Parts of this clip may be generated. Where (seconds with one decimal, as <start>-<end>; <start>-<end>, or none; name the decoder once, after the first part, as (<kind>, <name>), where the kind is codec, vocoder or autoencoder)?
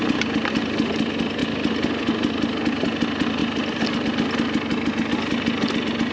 none